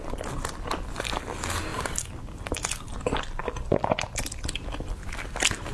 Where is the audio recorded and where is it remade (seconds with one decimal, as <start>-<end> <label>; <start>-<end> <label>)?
0.0-5.7 recorded